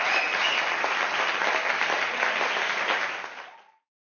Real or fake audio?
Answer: real